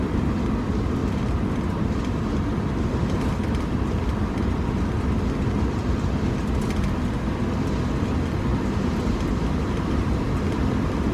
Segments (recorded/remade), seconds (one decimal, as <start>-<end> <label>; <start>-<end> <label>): 0.0-8.5 recorded; 8.5-10.1 remade; 10.1-11.1 recorded